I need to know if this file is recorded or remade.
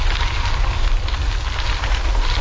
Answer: recorded